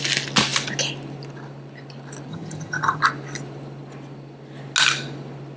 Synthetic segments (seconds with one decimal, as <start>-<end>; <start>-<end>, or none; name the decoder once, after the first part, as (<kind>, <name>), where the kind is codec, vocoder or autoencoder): 2.3-3.0 (vocoder, HiFi-GAN)